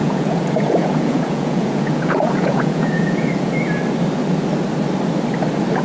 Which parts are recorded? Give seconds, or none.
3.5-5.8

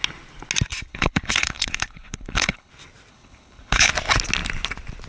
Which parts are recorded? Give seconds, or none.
0.0-0.9; 2.7-3.1; 3.9-5.1

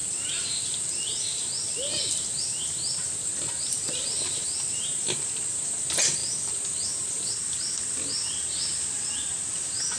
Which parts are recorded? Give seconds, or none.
0.0-10.0